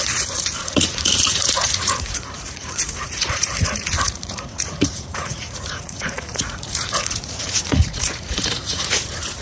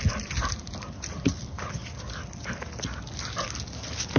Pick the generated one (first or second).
first